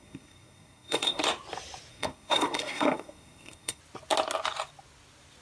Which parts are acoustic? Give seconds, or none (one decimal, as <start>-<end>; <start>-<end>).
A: 1.2-1.9; 3.8-5.4